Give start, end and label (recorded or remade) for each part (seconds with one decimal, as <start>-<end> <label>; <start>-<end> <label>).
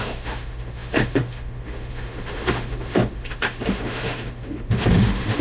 0.0-5.4 remade